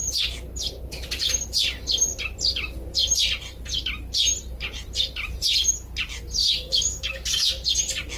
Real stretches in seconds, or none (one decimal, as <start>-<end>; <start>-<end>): 0.0-6.4; 7.5-8.2